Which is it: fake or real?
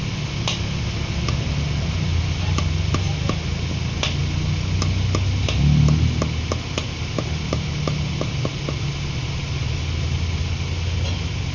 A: real